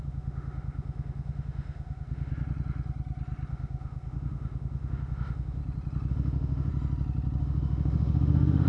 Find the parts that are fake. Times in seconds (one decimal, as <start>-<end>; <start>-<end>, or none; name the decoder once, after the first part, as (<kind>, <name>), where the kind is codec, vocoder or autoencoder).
0.0-2.3 (autoencoder, DAC-VAE); 3.5-5.6; 6.1-6.7; 7.4-8.7